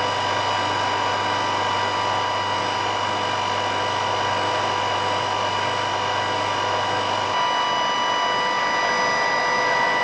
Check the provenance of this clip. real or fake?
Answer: real